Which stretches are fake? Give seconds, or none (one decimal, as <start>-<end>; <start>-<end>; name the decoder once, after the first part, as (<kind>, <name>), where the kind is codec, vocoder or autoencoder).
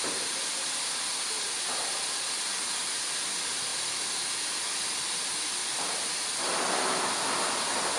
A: 5.6-6.1 (vocoder, BigVGAN v2)